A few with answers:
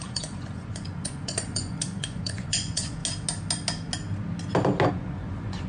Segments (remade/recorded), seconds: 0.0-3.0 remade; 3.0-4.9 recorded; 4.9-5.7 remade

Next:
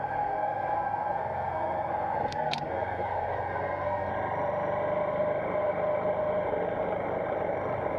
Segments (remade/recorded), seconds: 0.0-4.1 remade; 4.1-8.0 recorded

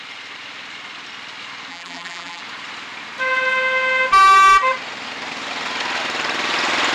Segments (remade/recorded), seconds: 0.0-1.7 recorded; 1.7-2.4 remade; 2.4-6.9 recorded

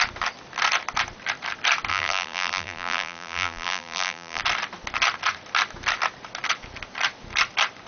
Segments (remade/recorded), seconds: 0.0-1.9 recorded; 1.9-4.4 remade; 4.4-7.9 recorded